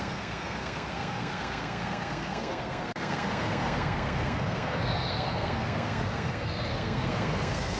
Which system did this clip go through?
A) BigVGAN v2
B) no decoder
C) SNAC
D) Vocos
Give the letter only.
C